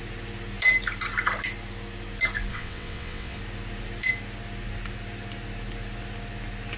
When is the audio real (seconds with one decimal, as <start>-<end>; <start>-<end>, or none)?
0.0-2.5; 3.4-6.8